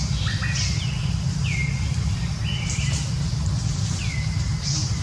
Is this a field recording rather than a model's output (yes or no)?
yes